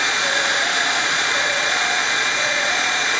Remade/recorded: remade